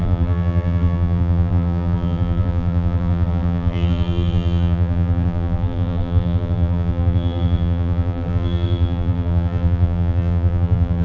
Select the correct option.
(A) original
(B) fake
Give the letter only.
B